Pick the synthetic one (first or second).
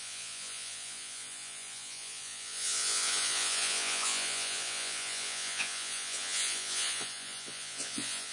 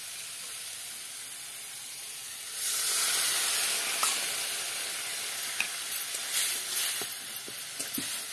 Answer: first